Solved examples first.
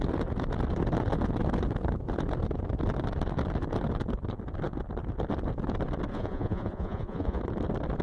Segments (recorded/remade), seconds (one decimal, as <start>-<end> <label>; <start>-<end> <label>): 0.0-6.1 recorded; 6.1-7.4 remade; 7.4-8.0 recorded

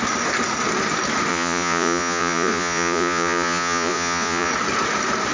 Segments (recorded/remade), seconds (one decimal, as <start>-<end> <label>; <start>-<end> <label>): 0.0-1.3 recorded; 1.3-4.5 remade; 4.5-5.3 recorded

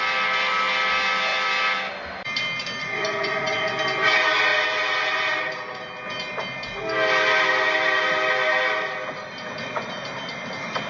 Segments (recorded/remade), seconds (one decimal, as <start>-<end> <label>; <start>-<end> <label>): 0.0-2.8 recorded; 2.8-3.7 remade; 3.7-10.9 recorded

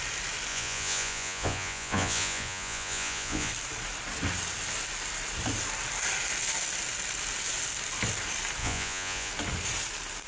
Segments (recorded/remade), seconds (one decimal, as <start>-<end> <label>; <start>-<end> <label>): 0.0-0.5 recorded; 0.5-3.5 remade; 3.5-8.6 recorded; 8.6-9.3 remade; 9.3-10.3 recorded

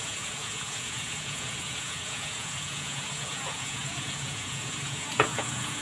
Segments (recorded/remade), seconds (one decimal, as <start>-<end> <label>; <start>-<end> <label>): 0.0-5.8 remade

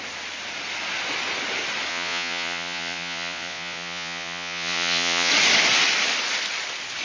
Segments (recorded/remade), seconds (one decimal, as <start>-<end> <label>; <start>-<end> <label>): 0.0-1.9 recorded; 1.9-5.3 remade; 5.3-7.0 recorded

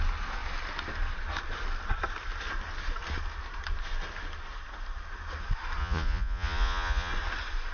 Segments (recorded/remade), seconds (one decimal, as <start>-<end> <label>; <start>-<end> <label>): 0.0-5.8 recorded; 5.8-7.1 remade; 7.1-7.7 recorded